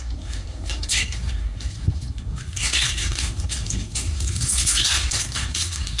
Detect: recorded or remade remade